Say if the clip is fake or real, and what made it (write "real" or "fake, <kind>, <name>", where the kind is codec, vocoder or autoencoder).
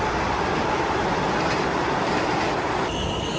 real